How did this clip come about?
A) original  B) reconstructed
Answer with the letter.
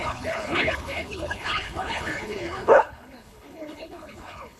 B